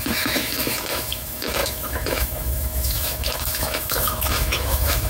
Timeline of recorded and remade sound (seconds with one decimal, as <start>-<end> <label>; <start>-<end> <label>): 0.0-5.1 remade